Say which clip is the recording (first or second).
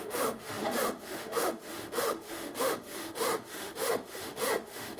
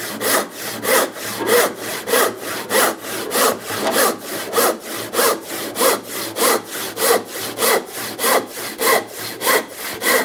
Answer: second